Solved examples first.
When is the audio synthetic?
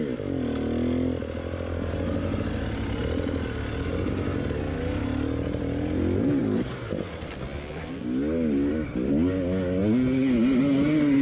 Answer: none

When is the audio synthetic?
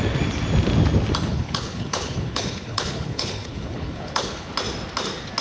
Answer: 1.3-4.5 (codec, HILCodec)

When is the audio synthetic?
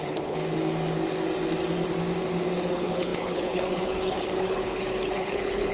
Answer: 0.0-0.4 (codec, HILCodec); 2.7-5.7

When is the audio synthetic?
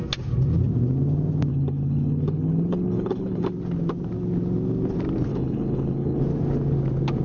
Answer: 1.5-3.5 (codec, HILCodec); 5.3-6.2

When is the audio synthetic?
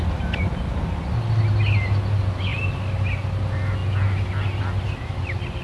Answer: none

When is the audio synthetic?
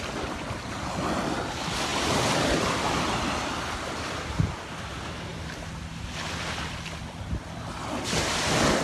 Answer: none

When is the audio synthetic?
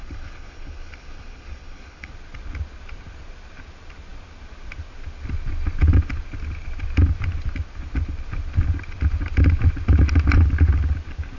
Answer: 0.0-2.1 (codec, HILCodec)